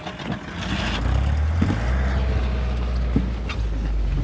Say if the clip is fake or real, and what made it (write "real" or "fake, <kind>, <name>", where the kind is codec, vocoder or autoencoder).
real